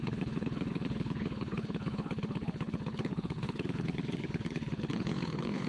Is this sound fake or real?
fake